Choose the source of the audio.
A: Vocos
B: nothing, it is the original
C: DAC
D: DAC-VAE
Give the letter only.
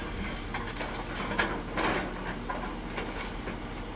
B